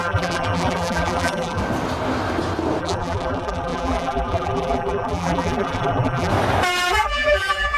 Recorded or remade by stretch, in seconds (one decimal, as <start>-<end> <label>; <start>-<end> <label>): 0.0-1.6 remade; 1.6-2.8 recorded; 2.8-6.3 remade; 6.3-6.9 recorded; 6.9-7.8 remade